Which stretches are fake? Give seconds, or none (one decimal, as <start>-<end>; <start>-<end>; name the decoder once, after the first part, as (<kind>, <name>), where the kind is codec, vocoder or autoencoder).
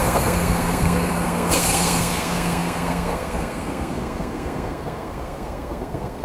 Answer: 0.0-6.2 (codec, SNAC)